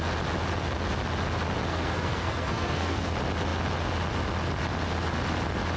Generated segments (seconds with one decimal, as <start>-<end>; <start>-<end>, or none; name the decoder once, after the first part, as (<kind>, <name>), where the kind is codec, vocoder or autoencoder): 1.7-3.1 (codec, SNAC)